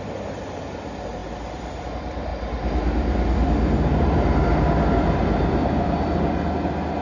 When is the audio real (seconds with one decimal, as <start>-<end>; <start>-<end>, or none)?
0.0-7.0